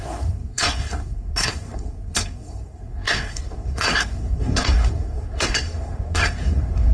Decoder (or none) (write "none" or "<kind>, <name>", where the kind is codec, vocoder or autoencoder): codec, SNAC